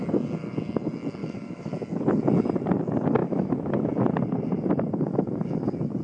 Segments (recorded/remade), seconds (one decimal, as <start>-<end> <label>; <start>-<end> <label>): 0.0-1.2 recorded; 1.2-1.7 remade; 1.7-3.2 recorded; 3.2-3.9 remade; 3.9-6.0 recorded